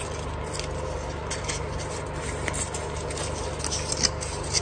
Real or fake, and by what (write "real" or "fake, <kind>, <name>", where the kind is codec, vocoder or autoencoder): real